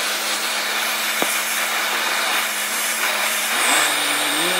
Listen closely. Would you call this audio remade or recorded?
remade